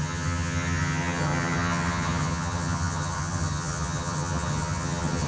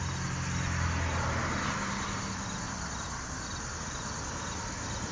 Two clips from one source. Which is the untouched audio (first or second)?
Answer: second